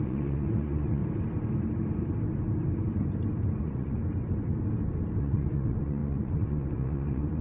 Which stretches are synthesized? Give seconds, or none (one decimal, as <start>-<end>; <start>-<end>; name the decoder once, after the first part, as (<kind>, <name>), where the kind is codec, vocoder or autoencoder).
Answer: 0.0-1.0 (vocoder, Vocos); 3.6-4.0; 5.2-7.4